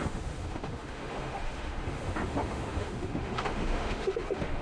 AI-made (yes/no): yes